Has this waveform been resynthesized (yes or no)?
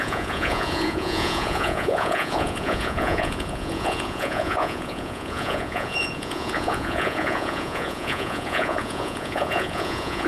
yes